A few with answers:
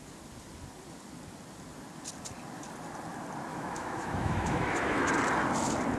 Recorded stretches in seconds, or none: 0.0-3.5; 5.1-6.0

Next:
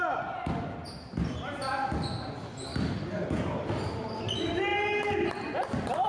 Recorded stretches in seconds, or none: 0.0-6.1

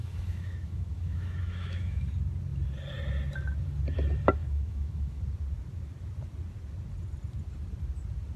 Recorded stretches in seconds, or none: 2.0-4.4; 5.2-8.4

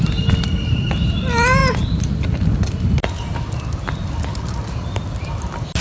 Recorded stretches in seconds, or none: 0.0-5.8

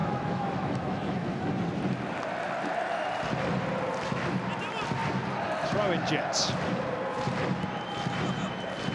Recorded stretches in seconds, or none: 1.5-8.9

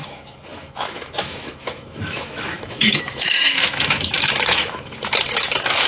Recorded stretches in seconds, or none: none